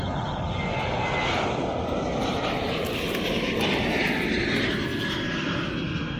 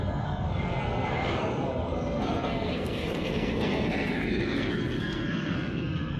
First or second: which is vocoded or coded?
second